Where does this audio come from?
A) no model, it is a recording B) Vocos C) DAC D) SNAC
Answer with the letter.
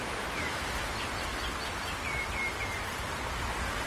A